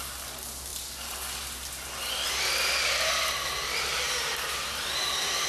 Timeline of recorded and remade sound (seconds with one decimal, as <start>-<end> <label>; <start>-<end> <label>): 0.0-5.5 recorded